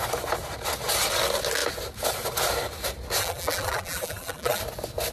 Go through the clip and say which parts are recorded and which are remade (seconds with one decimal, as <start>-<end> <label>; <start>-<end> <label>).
0.0-3.2 recorded; 3.2-4.6 remade; 4.6-5.1 recorded